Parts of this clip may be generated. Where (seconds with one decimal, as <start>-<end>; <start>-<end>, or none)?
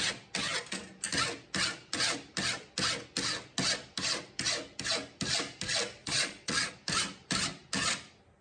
6.0-6.7